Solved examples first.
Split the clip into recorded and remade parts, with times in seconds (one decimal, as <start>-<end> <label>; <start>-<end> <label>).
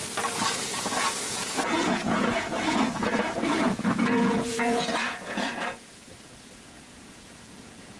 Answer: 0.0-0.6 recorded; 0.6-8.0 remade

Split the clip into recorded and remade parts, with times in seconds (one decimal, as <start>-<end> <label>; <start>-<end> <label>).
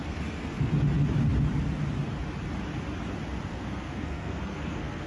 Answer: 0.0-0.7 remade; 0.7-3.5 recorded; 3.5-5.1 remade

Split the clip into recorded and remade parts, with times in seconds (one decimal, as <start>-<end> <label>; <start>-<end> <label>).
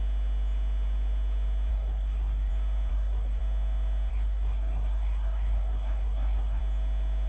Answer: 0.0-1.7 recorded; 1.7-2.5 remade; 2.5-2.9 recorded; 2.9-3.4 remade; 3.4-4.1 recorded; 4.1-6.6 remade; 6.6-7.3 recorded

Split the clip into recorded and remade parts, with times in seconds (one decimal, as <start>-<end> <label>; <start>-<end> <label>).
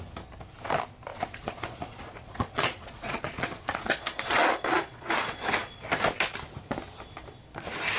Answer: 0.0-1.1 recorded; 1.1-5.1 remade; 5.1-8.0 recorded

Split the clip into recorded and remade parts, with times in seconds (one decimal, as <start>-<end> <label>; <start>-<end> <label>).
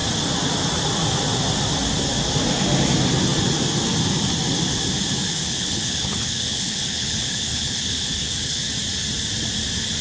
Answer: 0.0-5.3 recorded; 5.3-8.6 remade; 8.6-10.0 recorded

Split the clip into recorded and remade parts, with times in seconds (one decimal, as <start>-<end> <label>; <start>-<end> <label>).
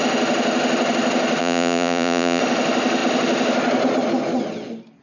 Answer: 0.0-1.4 recorded; 1.4-2.4 remade; 2.4-5.0 recorded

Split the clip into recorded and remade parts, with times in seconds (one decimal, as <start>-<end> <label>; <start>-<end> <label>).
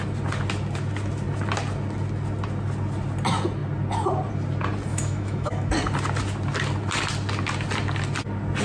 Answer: 0.0-4.9 recorded; 4.9-5.7 remade; 5.7-8.6 recorded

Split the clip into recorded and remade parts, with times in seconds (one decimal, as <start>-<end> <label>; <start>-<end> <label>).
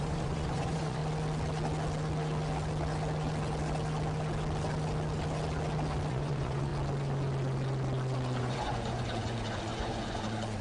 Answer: 0.0-1.0 remade; 1.0-6.1 recorded; 6.1-6.7 remade; 6.7-8.4 recorded; 8.4-10.6 remade